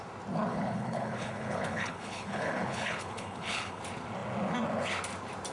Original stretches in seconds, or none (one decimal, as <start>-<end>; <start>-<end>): 0.0-0.5; 3.8-5.5